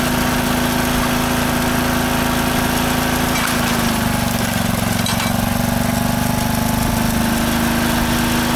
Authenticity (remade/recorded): recorded